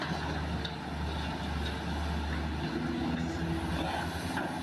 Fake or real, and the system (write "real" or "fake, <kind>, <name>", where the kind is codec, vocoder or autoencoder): real